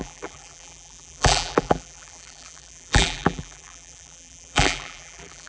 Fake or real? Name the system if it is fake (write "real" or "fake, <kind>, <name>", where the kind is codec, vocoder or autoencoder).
fake, vocoder, BigVGAN v2